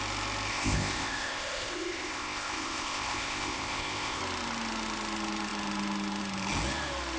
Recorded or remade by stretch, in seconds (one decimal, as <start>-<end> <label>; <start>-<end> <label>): 0.0-0.5 recorded; 0.5-4.2 remade; 4.2-7.2 recorded